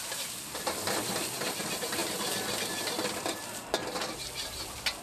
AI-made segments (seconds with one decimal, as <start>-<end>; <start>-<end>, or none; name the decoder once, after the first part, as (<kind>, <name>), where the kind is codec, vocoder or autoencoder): none